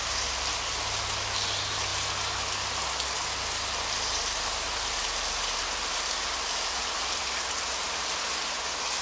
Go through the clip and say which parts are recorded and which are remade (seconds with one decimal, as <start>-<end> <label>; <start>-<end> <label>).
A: 0.0-9.0 recorded